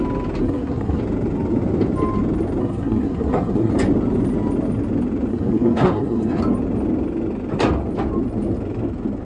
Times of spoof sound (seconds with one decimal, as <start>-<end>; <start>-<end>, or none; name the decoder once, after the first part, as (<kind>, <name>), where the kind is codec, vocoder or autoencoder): 0.4-1.0 (codec, SNAC); 2.6-3.7; 5.3-6.4